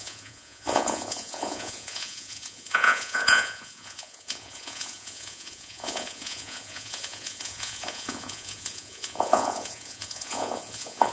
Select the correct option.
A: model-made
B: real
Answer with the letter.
A